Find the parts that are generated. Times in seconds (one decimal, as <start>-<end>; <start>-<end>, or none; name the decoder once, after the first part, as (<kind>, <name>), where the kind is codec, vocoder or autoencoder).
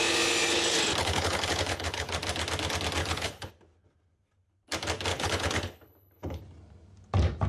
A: 1.0-2.1 (codec, HILCodec); 3.0-3.5; 5.1-6.4